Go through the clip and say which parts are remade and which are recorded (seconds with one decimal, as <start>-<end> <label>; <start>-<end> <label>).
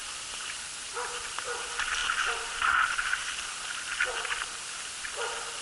0.0-5.6 recorded